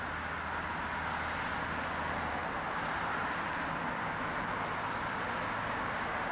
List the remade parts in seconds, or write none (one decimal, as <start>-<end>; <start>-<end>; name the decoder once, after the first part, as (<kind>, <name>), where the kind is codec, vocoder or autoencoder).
none